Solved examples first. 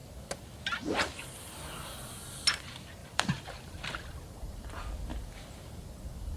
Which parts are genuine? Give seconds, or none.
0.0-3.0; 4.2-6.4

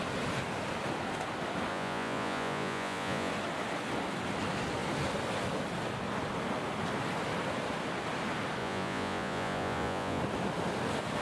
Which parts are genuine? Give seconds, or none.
0.0-1.7; 3.3-8.6; 10.2-11.2

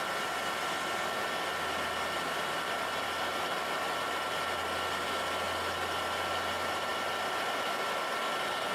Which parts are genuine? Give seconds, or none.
0.0-8.7

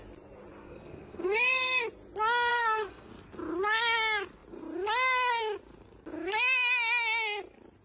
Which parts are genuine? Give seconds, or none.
0.0-0.6; 1.8-2.5; 3.1-7.8

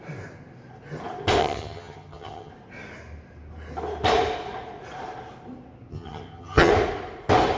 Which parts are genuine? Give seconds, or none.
0.0-1.4; 2.5-5.9; 6.7-7.6

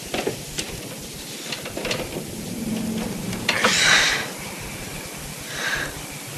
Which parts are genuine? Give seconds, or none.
0.7-6.4

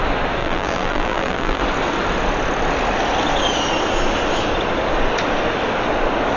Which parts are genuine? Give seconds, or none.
0.0-0.4; 1.6-6.4

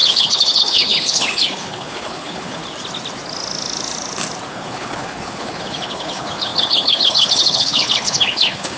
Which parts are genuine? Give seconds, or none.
2.6-4.5